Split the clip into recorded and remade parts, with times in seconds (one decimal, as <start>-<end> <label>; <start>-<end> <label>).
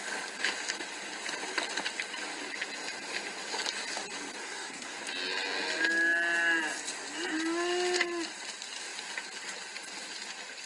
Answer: 0.0-4.4 recorded; 4.4-5.0 remade; 5.0-10.7 recorded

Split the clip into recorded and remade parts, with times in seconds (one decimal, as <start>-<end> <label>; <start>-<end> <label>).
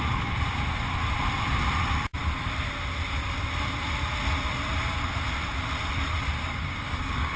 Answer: 0.0-6.4 recorded; 6.4-7.4 remade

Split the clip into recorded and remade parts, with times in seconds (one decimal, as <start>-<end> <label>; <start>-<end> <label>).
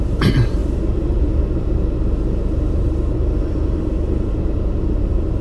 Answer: 0.0-5.4 recorded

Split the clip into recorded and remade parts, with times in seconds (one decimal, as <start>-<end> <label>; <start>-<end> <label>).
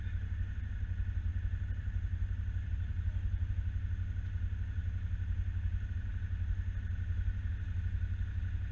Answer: 0.0-1.3 recorded; 1.3-3.5 remade; 3.5-8.7 recorded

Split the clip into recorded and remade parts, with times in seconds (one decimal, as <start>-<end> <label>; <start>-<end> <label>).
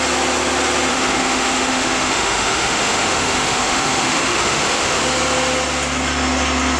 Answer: 0.0-0.9 recorded; 0.9-5.0 remade; 5.0-6.8 recorded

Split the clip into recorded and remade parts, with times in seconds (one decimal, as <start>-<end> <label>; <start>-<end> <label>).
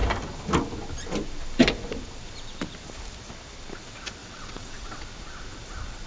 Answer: 0.0-4.2 recorded; 4.2-5.0 remade; 5.0-6.1 recorded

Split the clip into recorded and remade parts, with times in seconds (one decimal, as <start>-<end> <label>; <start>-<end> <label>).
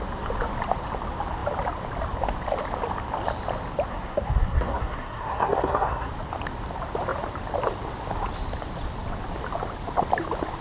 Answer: 0.0-3.9 recorded; 3.9-6.1 remade; 6.1-10.6 recorded